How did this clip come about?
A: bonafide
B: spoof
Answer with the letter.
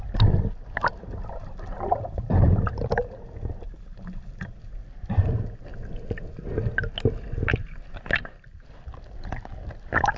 A